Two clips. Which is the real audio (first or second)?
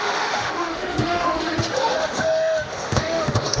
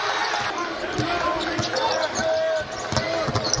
second